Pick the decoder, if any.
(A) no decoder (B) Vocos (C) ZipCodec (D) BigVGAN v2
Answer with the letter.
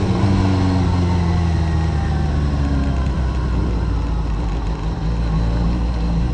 A